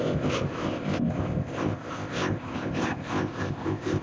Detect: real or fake fake